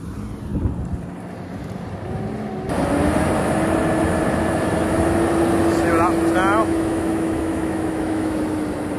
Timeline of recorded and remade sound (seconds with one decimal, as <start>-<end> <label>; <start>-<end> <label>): 0.0-6.6 recorded; 6.6-8.4 remade; 8.4-9.0 recorded